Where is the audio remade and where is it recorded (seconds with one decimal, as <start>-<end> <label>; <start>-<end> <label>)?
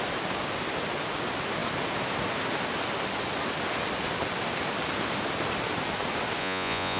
0.0-6.4 recorded; 6.4-7.0 remade